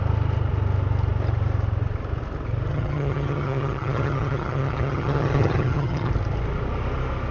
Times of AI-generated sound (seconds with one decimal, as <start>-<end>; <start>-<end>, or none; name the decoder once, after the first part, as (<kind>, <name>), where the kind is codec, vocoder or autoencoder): 2.7-6.1 (vocoder, HiFi-GAN)